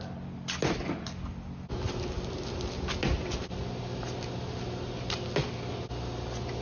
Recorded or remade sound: recorded